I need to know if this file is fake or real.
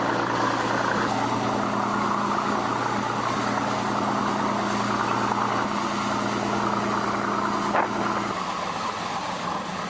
real